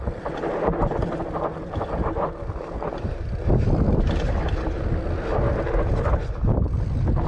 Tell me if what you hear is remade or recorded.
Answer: recorded